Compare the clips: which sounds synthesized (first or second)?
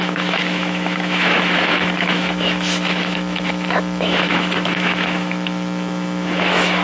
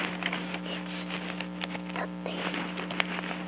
first